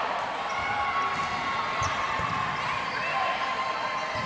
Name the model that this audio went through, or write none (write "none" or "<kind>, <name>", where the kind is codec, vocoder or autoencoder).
none